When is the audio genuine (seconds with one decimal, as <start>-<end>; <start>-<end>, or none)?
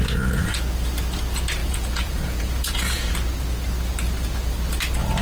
0.0-1.6; 3.1-5.2